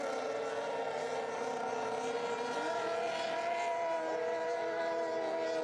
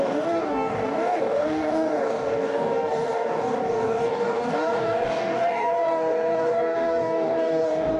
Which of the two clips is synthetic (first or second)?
second